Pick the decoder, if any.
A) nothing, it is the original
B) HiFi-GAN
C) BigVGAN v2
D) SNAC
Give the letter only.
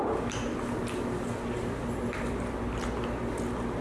A